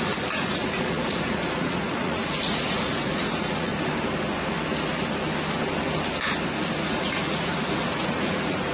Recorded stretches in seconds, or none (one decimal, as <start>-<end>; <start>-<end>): 3.7-6.8